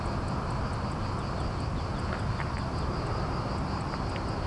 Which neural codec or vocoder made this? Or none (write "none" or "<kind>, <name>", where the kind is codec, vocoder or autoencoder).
none